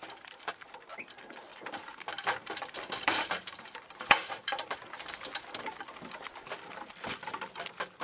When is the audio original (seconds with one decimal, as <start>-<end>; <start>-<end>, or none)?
0.0-1.5; 5.0-8.0